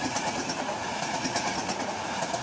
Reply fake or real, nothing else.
fake